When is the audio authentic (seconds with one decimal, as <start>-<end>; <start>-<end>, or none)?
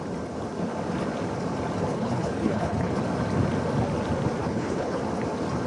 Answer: 0.0-1.9; 2.9-4.4; 5.0-5.7